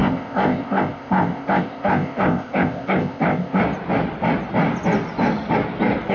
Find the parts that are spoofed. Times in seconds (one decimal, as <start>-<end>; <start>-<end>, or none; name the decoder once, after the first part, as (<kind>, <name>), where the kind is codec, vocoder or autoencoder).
0.0-3.6 (codec, ZipCodec)